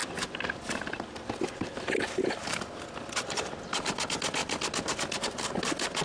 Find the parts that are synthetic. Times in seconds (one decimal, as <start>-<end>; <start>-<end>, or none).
0.0-3.6; 4.4-5.2